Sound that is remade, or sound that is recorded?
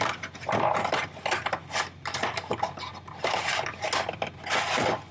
recorded